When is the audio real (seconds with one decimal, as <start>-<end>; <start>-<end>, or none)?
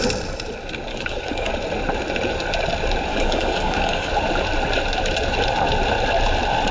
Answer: 0.0-0.9; 1.5-3.1; 4.1-6.7